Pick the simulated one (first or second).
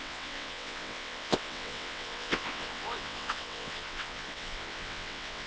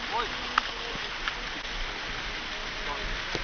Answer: first